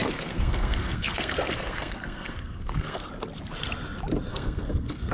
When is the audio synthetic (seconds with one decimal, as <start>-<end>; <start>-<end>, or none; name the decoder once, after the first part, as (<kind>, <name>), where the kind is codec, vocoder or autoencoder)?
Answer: 0.0-3.1 (codec, SNAC); 4.3-5.1